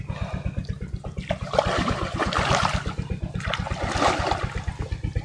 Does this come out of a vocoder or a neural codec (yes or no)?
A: no